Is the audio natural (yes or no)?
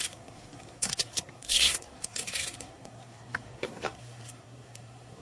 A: no